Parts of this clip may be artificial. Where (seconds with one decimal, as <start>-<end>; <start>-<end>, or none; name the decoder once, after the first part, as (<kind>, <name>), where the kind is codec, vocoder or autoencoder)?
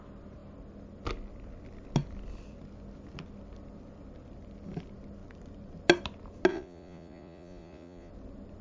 6.5-8.1 (vocoder, Vocos)